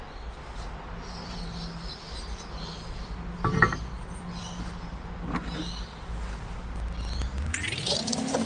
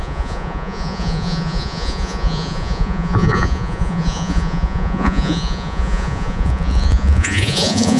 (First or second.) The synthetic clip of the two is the second